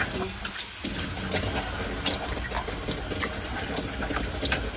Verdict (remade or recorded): recorded